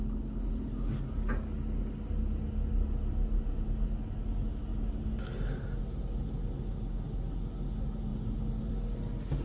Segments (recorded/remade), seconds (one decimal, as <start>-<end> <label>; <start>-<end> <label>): 0.0-9.4 recorded